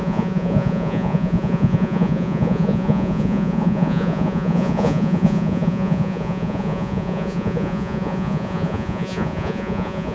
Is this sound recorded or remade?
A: remade